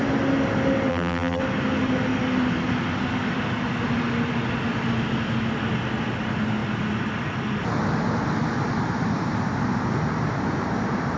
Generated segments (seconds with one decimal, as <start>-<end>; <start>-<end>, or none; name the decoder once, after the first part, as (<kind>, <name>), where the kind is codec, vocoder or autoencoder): 0.9-1.4 (vocoder, BigVGAN v2)